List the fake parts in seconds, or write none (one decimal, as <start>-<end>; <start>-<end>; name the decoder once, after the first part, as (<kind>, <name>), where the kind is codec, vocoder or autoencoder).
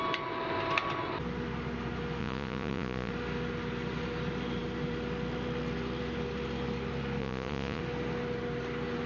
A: 2.2-3.1 (vocoder, Vocos); 7.2-7.8